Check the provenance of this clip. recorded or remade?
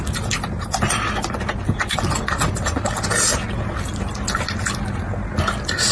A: recorded